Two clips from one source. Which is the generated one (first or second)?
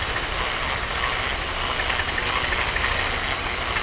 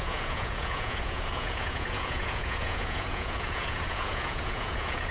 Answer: second